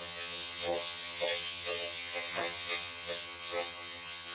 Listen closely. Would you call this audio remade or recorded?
remade